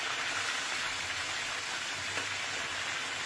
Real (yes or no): yes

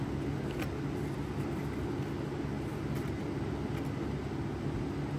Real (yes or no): yes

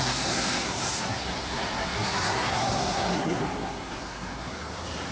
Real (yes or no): no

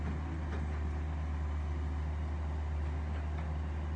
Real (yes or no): yes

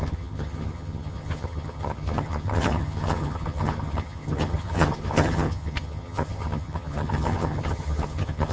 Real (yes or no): no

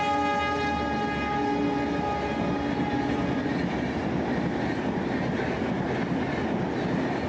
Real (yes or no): yes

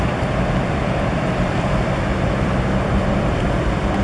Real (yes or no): no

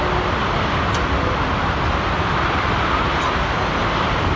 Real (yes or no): yes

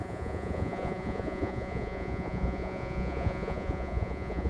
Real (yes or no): no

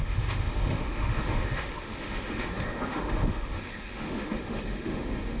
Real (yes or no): no